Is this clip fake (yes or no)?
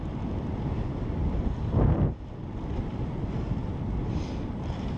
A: no